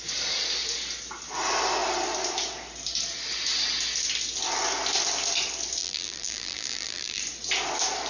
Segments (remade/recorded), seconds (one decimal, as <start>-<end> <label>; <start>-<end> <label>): 0.0-5.8 recorded; 5.8-7.2 remade; 7.2-8.1 recorded